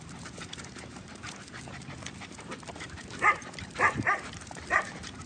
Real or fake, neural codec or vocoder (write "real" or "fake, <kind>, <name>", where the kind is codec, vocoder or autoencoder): fake, vocoder, BigVGAN v2